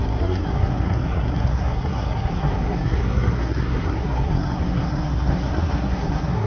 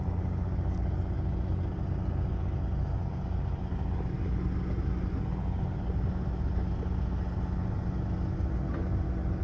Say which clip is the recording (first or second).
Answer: second